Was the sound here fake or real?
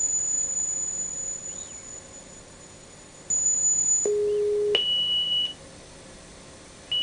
real